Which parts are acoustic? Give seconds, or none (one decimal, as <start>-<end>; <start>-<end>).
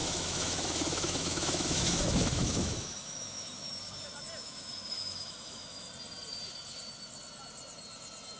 3.7-4.4; 5.9-8.4